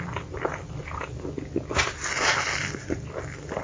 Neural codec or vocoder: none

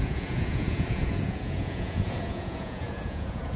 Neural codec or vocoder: vocoder, Vocos